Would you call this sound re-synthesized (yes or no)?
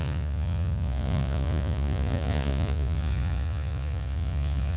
yes